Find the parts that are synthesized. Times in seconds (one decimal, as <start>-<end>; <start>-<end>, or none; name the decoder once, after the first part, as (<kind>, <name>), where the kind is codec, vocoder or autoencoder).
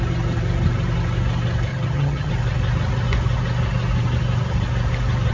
1.7-2.3 (vocoder, HiFi-GAN)